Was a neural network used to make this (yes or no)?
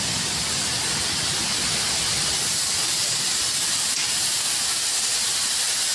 no